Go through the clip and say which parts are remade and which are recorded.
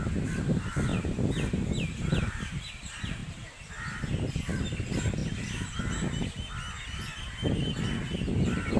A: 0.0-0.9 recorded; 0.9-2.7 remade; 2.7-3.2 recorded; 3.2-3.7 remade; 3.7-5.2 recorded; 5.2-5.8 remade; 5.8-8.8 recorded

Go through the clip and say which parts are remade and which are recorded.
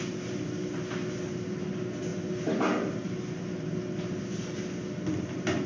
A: 0.0-5.7 recorded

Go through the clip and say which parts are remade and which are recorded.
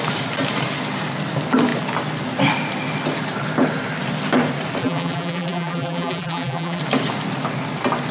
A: 0.0-4.8 recorded; 4.8-6.8 remade; 6.8-8.1 recorded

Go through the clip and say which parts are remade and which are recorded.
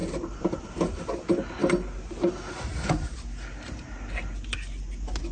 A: 0.0-0.7 remade; 0.7-5.3 recorded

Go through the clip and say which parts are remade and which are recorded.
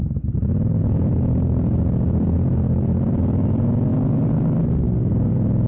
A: 0.0-5.7 recorded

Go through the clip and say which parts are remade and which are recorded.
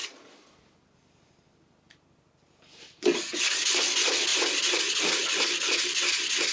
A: 0.0-4.3 recorded; 4.3-5.5 remade; 5.5-6.5 recorded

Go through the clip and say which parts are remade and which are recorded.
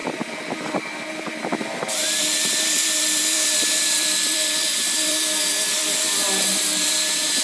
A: 0.0-7.4 remade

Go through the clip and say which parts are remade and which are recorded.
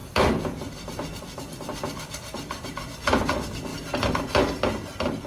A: 0.0-3.2 remade; 3.2-5.3 recorded